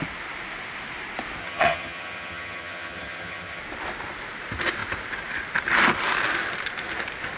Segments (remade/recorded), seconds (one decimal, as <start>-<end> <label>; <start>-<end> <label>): 0.0-1.4 recorded; 1.4-3.6 remade; 3.6-7.4 recorded